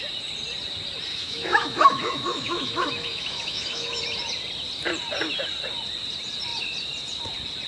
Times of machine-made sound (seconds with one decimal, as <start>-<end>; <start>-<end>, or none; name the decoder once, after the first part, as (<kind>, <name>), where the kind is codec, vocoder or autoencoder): 1.1-4.0 (autoencoder, DAC-VAE)